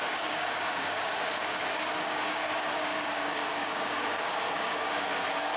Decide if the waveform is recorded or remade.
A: remade